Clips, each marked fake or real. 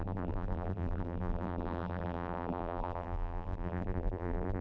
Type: fake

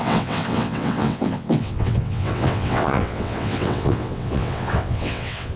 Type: fake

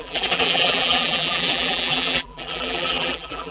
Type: fake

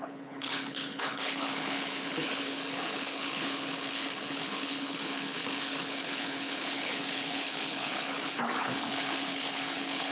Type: fake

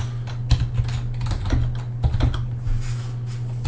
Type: real